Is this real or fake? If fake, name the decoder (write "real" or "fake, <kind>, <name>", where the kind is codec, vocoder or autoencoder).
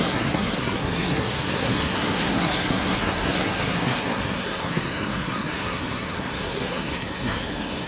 fake, codec, SNAC